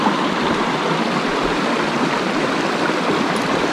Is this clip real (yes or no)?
no